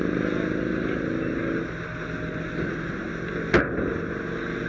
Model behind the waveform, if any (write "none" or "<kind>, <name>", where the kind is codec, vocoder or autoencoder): none